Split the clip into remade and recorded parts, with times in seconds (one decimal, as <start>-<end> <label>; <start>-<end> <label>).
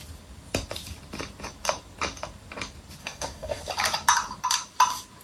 0.0-3.0 recorded; 3.0-3.6 remade; 3.6-5.2 recorded